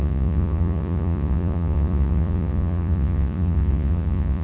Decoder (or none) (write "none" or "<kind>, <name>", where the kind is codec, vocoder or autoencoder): vocoder, Vocos